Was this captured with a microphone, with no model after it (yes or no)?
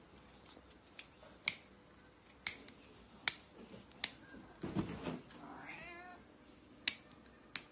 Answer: yes